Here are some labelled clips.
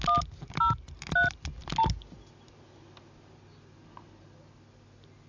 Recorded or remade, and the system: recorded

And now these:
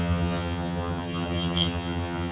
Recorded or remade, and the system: remade, vocoder, HiFi-GAN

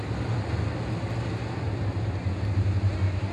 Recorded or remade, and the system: recorded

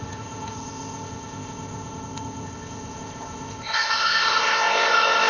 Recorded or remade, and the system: remade, codec, ZipCodec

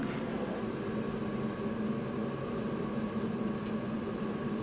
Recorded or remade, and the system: recorded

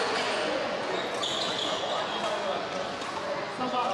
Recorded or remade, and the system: remade, vocoder, Vocos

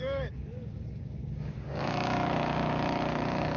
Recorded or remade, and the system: remade, codec, DAC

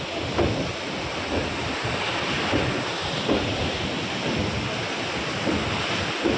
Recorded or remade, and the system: recorded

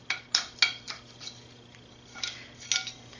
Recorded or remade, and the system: recorded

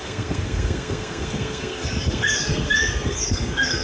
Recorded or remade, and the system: remade, codec, SNAC